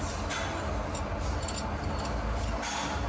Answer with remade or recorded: recorded